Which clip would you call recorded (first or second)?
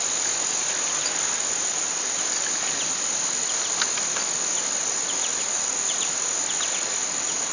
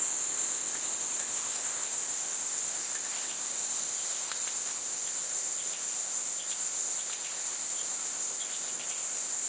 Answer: first